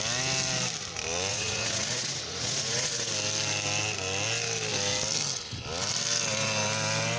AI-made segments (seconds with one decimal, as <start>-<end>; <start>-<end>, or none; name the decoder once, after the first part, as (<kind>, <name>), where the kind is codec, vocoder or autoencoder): 1.3-3.1 (vocoder, Vocos)